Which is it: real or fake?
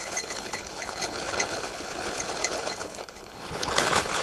fake